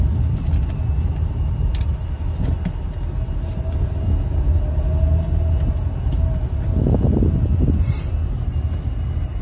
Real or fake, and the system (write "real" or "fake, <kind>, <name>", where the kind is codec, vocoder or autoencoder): real